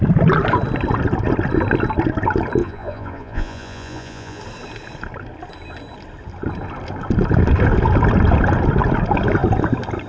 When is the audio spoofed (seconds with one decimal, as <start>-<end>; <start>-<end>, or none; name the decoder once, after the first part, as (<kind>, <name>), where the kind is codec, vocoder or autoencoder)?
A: 2.6-4.4 (vocoder, Vocos)